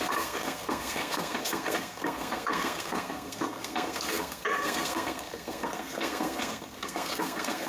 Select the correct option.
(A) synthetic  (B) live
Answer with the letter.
A